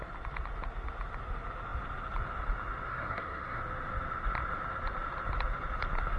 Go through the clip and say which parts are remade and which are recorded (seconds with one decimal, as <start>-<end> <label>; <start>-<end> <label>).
0.0-2.9 recorded; 2.9-3.6 remade; 3.6-6.2 recorded